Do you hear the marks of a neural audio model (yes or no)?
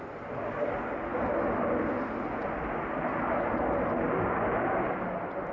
no